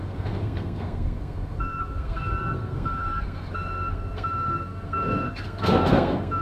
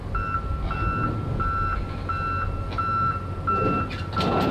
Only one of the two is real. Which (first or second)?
second